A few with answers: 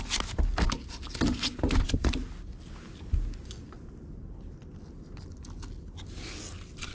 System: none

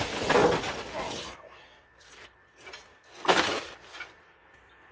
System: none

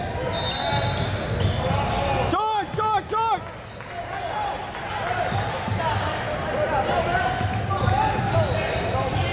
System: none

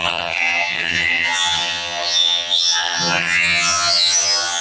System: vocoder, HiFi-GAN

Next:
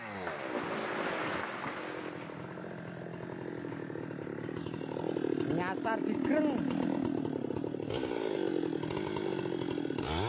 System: none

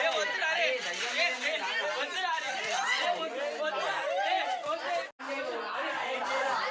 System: none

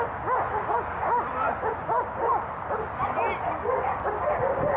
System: none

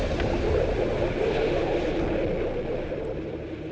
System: none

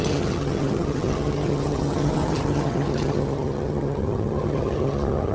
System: vocoder, HiFi-GAN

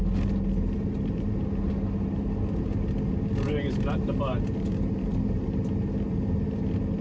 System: none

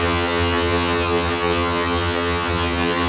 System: vocoder, HiFi-GAN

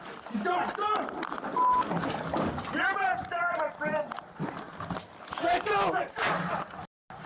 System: none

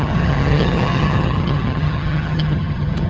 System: vocoder, HiFi-GAN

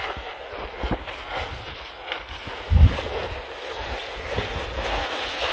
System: none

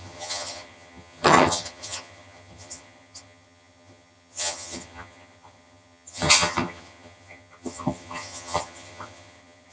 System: vocoder, HiFi-GAN